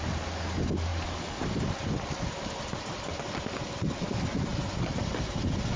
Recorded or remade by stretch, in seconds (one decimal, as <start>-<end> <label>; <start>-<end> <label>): 0.0-0.9 recorded; 0.9-3.1 remade; 3.1-5.8 recorded